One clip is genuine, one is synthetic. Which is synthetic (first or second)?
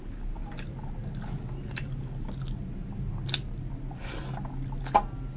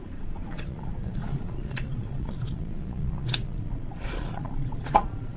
second